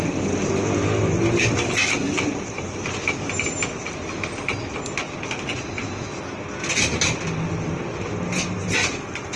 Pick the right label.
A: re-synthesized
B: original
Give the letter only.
B